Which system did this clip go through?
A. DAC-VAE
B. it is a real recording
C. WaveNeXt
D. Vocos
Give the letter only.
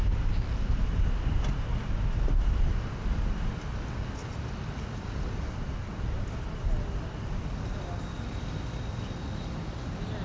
B